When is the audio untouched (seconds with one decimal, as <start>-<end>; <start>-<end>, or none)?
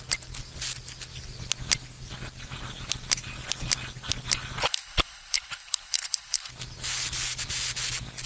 0.0-4.6; 6.5-8.3